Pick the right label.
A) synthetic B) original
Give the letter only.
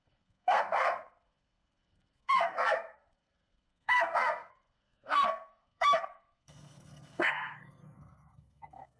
A